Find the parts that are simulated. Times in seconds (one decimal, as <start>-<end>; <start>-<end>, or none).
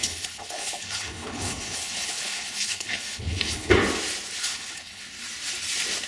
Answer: 0.0-3.7; 4.4-5.0